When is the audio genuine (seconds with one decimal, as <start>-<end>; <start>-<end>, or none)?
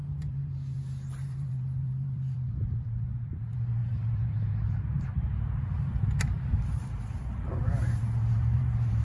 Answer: none